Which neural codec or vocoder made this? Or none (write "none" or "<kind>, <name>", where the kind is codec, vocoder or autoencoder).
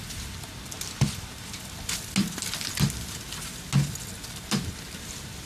none